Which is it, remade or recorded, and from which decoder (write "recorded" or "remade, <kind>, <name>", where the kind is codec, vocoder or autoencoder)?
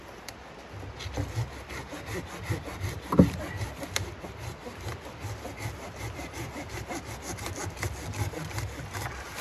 recorded